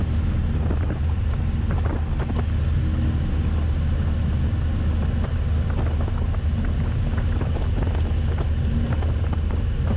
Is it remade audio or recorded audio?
recorded